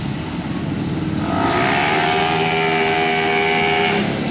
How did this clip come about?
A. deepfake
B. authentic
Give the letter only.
B